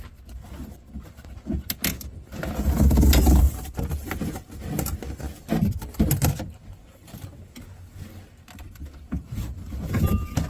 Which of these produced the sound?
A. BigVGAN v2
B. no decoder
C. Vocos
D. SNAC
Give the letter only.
B